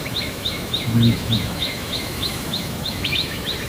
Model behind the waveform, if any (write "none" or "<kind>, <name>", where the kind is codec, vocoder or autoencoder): autoencoder, DAC-VAE